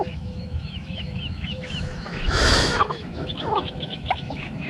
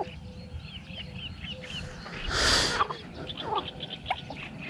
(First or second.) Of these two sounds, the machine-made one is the first